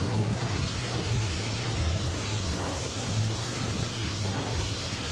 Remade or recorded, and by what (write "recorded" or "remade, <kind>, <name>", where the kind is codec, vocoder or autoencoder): remade, codec, SNAC